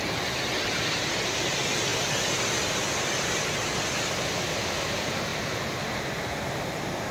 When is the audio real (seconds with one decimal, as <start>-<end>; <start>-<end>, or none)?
0.0-5.3; 6.0-7.1